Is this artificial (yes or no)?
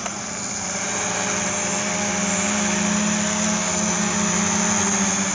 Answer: no